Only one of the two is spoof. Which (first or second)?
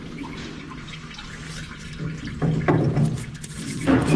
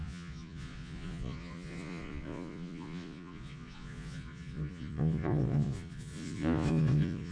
second